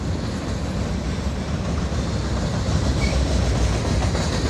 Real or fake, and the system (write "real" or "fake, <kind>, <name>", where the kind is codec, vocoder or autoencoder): real